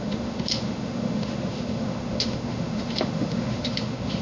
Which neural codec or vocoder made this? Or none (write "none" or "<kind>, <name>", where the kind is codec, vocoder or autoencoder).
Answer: autoencoder, DAC-VAE